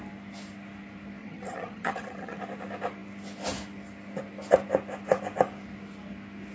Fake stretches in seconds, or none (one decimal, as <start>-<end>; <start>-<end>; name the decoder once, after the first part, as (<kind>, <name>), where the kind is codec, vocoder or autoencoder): 1.2-2.4 (vocoder, HiFi-GAN)